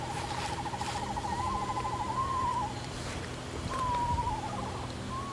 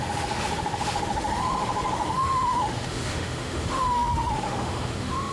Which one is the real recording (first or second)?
first